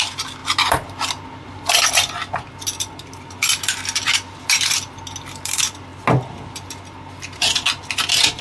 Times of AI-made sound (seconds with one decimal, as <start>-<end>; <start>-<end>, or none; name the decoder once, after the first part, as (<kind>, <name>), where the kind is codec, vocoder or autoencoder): none